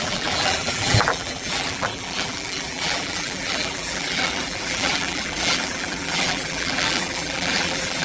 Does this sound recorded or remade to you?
remade